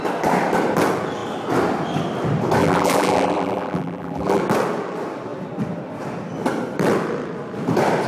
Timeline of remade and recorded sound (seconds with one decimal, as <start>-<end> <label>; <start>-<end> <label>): 0.0-2.6 recorded; 2.6-4.4 remade; 4.4-8.1 recorded